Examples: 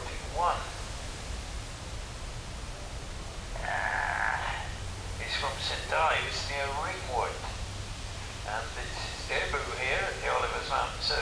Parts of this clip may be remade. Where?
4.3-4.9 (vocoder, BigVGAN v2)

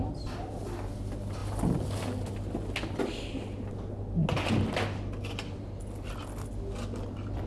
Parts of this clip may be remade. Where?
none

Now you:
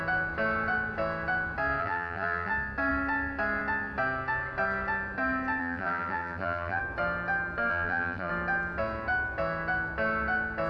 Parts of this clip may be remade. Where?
1.8-2.5 (vocoder, BigVGAN v2); 5.6-6.8; 7.7-8.3

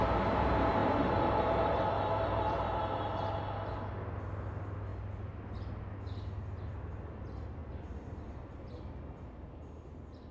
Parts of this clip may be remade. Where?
0.8-2.8 (vocoder, BigVGAN v2); 7.6-9.0